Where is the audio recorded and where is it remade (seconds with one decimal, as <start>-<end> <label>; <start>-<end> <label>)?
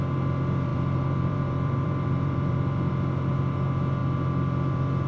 0.0-0.7 recorded; 0.7-2.9 remade; 2.9-4.0 recorded; 4.0-5.1 remade